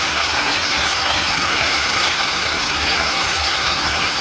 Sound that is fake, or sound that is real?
fake